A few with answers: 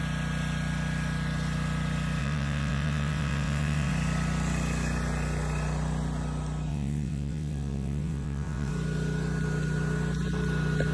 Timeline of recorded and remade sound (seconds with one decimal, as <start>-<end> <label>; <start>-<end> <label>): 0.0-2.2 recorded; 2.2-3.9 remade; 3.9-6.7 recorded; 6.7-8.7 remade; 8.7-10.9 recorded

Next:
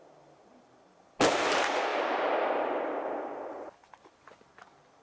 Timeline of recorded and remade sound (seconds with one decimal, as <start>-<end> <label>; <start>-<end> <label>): 0.0-5.0 recorded

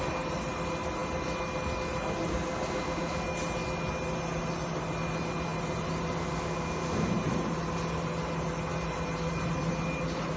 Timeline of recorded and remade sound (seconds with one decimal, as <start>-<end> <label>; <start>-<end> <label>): 0.0-10.4 recorded

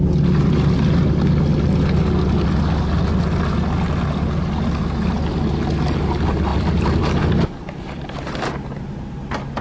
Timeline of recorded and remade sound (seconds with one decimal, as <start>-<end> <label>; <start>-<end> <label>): 0.0-9.6 recorded

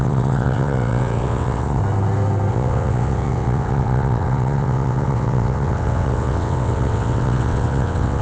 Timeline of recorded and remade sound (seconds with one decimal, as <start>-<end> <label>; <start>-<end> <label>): 0.0-1.8 remade; 1.8-2.5 recorded; 2.5-8.2 remade

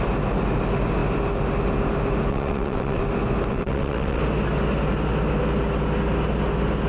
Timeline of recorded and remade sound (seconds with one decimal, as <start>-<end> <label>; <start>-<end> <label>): 0.0-2.3 recorded; 2.3-3.0 remade; 3.0-3.5 recorded; 3.5-4.2 remade; 4.2-6.9 recorded

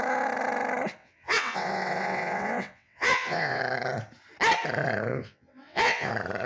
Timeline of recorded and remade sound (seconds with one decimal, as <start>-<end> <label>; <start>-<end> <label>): 0.0-1.0 recorded; 1.0-3.6 remade; 3.6-5.1 recorded; 5.1-6.1 remade; 6.1-6.5 recorded

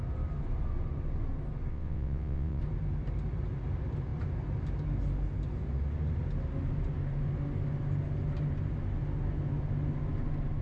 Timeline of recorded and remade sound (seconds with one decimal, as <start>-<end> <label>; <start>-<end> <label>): 0.0-1.7 recorded; 1.7-2.6 remade; 2.6-10.6 recorded